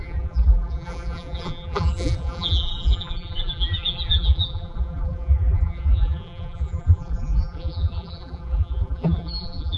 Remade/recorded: remade